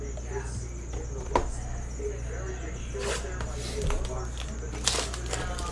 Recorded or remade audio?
recorded